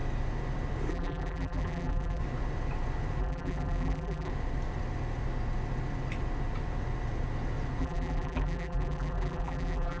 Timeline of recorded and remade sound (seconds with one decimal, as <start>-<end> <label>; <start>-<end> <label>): 0.0-0.9 recorded; 0.9-2.2 remade; 2.2-3.2 recorded; 3.2-4.3 remade; 4.3-7.8 recorded; 7.8-10.0 remade